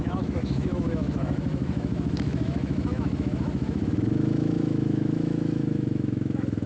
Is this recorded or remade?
remade